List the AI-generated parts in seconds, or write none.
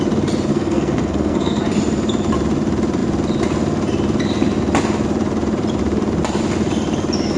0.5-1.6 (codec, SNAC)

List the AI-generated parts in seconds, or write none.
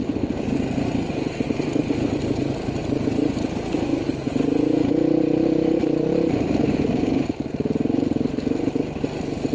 none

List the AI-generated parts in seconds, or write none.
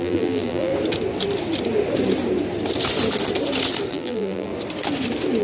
0.0-0.7 (vocoder, BigVGAN v2); 3.9-4.5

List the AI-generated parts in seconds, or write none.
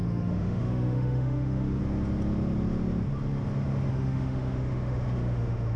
0.0-1.8 (autoencoder, DAC-VAE); 3.9-5.8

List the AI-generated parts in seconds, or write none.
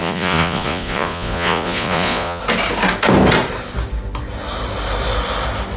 0.0-2.4 (vocoder, Vocos)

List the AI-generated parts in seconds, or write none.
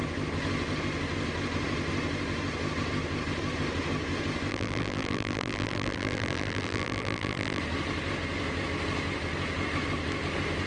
4.5-7.6 (vocoder, BigVGAN v2)